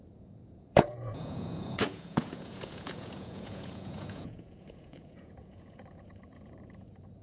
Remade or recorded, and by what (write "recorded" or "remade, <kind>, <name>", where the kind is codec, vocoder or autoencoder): remade, vocoder, Vocos